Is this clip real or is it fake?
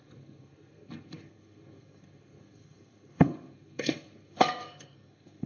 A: fake